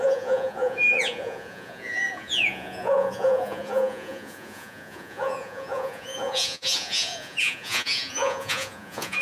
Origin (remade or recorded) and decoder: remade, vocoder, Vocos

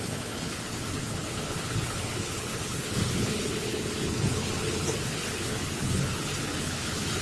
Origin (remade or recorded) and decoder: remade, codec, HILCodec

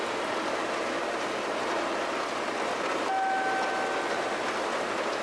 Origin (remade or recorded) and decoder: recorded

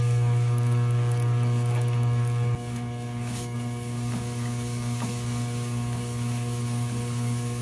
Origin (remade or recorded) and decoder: remade, codec, DAC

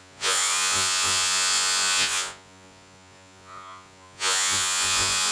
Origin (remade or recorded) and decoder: remade, vocoder, Vocos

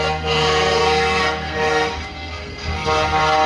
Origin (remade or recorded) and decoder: remade, codec, SNAC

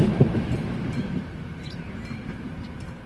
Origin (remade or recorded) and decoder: remade, vocoder, BigVGAN v2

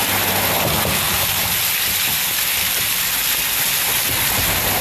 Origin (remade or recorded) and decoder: recorded